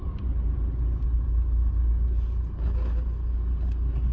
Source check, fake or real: real